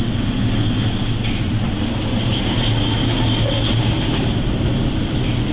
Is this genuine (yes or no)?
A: yes